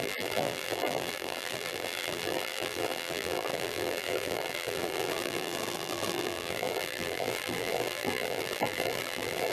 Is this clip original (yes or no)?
no